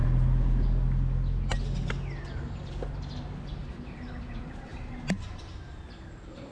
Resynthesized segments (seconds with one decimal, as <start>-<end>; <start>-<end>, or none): none